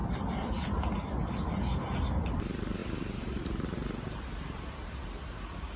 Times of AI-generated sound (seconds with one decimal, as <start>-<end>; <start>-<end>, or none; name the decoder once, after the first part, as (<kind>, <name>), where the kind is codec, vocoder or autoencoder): none